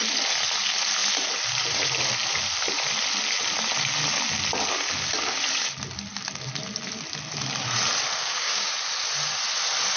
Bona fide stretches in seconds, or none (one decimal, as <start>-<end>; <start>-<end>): 0.0-8.2; 8.7-10.0